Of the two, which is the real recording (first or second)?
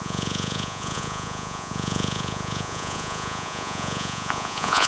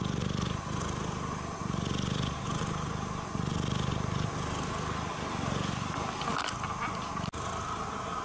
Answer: second